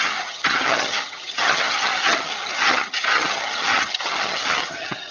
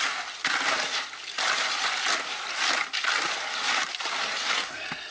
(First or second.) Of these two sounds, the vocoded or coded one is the first